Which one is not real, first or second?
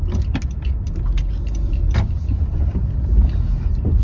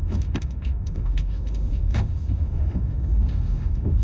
second